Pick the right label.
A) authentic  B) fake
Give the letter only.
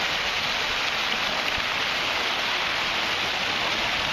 A